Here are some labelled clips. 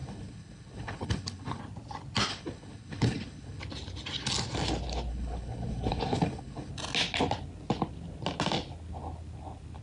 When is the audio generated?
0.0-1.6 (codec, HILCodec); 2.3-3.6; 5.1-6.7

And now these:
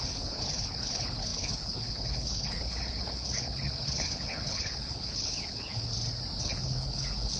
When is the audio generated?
0.0-5.9 (codec, HILCodec); 6.4-7.4

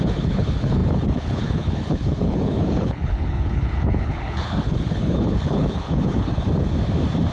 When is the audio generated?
0.0-6.3 (codec, HILCodec)

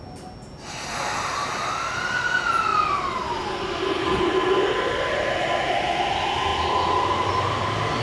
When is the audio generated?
none

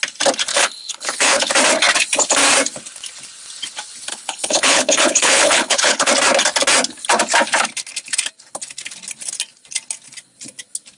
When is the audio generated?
0.5-1.5 (codec, HILCodec); 4.1-6.1

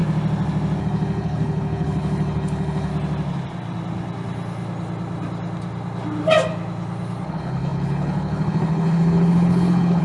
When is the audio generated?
0.8-2.9 (codec, HILCodec); 7.3-10.0

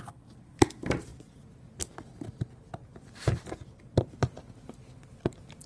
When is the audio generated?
none

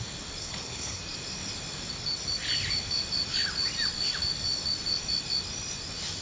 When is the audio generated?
0.4-1.0 (codec, HILCodec)